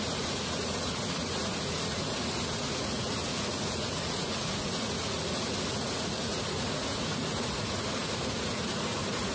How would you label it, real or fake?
fake